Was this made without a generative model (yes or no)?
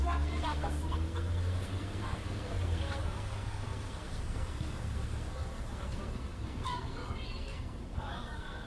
no